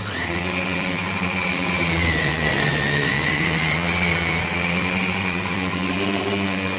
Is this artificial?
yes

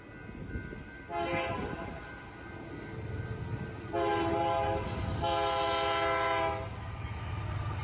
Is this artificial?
no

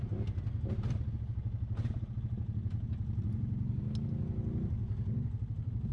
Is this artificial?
no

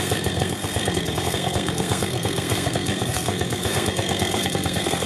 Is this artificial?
yes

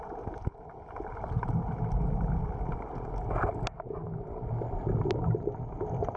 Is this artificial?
no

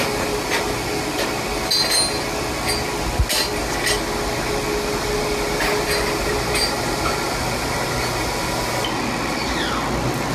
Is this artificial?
no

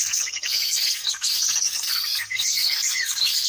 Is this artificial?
yes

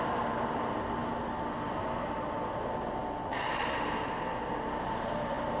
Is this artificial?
no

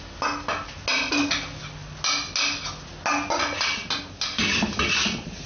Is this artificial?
no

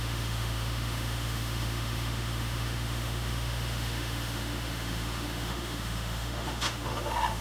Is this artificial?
yes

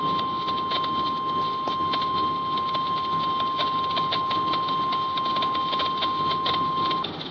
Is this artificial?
no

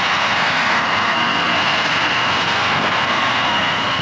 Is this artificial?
yes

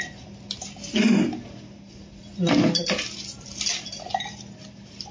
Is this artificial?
no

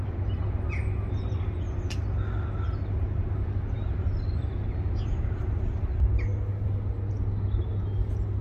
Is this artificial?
no